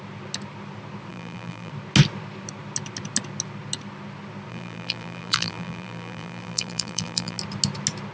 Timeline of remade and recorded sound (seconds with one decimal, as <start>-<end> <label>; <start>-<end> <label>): 0.0-1.1 recorded; 1.1-1.7 remade; 1.7-4.5 recorded; 4.5-7.4 remade; 7.4-8.1 recorded